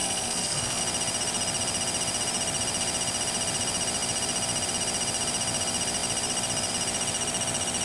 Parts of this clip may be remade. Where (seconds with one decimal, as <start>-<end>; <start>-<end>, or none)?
0.0-0.8